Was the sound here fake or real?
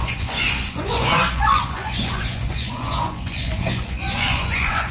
fake